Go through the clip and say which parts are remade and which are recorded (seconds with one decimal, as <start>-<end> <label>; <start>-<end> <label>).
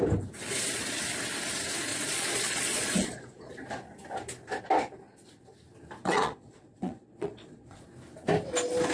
0.0-1.9 recorded; 1.9-3.5 remade; 3.5-6.0 recorded; 6.0-7.8 remade; 7.8-8.9 recorded